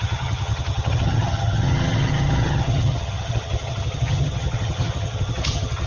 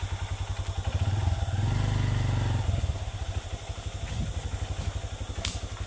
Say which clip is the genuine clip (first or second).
second